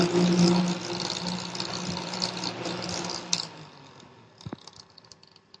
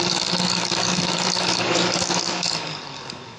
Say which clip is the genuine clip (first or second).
first